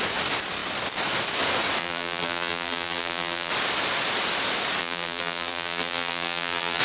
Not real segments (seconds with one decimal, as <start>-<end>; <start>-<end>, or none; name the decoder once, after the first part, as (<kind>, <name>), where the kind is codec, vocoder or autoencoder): 1.8-3.5 (vocoder, BigVGAN v2); 4.8-6.8